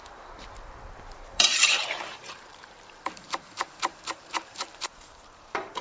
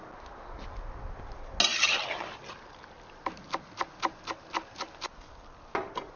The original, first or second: second